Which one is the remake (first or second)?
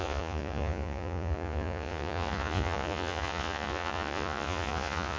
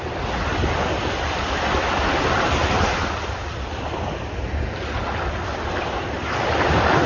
first